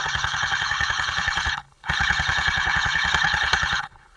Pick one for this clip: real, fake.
fake